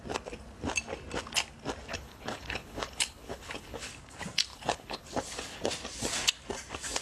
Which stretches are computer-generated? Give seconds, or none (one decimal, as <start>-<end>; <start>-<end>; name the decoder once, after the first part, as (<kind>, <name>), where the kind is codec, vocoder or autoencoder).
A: 1.9-3.9 (codec, HILCodec); 4.5-5.7